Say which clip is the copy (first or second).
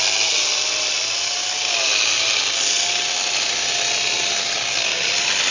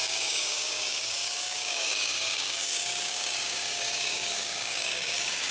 second